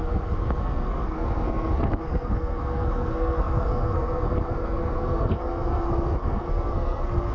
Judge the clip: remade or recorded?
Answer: remade